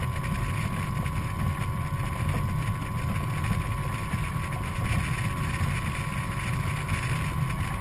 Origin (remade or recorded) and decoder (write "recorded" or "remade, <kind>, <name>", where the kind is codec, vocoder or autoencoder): recorded